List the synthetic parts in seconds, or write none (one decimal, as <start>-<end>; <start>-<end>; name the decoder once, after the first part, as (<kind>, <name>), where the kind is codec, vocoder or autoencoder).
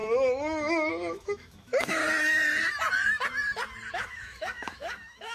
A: 0.0-2.0 (autoencoder, DAC-VAE); 3.9-5.3